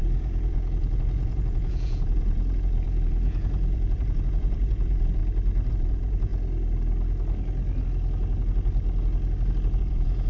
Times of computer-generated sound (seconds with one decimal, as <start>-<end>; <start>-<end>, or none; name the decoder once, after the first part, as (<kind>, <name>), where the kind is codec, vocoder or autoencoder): 0.0-5.2 (vocoder, Vocos); 5.7-6.3; 9.8-10.3

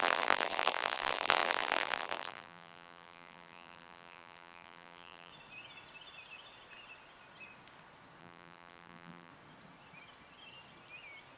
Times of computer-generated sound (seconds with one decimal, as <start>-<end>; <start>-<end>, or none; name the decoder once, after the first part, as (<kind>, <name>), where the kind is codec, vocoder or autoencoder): 0.0-5.3 (vocoder, BigVGAN v2); 8.2-9.3

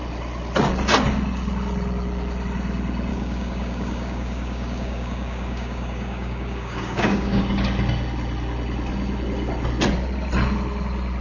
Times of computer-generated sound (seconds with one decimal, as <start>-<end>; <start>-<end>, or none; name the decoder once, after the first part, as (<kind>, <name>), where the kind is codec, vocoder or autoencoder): 3.1-7.4 (codec, DAC)

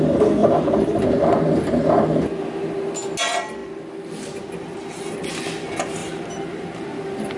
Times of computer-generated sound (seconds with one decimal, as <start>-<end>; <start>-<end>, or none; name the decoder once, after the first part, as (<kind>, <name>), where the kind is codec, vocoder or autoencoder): 0.4-1.8 (vocoder, BigVGAN v2); 6.0-6.9

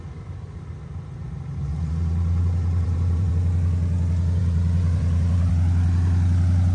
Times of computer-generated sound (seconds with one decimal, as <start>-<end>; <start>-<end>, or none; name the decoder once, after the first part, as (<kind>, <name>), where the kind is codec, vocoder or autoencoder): 1.6-3.3 (vocoder, BigVGAN v2); 4.4-5.5